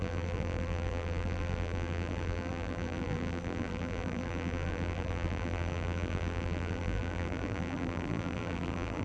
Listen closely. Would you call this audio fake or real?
fake